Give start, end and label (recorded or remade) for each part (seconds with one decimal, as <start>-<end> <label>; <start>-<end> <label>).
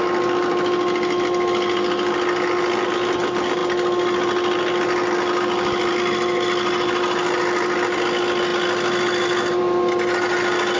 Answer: 0.0-10.8 recorded